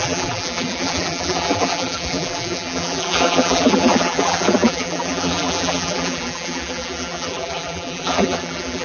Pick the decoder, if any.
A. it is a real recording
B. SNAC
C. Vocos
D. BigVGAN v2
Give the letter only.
D